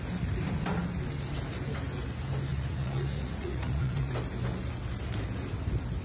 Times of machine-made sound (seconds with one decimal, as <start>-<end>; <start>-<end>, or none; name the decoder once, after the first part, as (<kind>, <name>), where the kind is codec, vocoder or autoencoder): 2.5-4.1 (vocoder, Vocos)